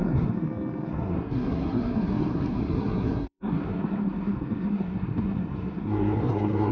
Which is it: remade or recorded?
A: remade